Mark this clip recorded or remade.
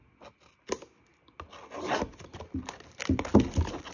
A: recorded